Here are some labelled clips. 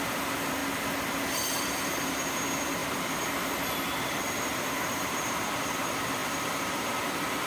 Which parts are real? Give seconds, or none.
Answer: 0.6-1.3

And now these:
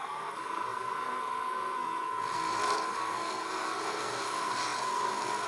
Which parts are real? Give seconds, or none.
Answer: none

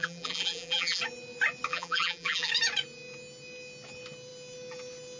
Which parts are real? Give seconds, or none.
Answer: 1.0-1.7; 2.5-5.2

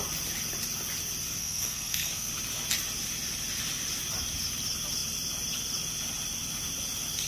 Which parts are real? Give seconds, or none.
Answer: 0.0-1.4; 2.3-7.3

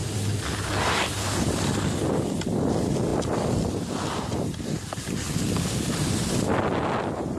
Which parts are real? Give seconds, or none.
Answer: 0.0-7.4

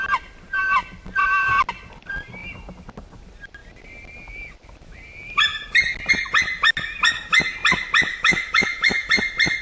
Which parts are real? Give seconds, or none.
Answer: 0.0-8.1; 9.1-9.6

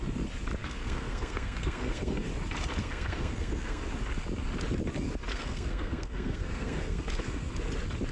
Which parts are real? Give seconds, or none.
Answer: 0.0-0.6; 2.3-2.8; 3.9-5.3; 7.5-8.1